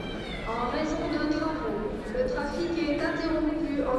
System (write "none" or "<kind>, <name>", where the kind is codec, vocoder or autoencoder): none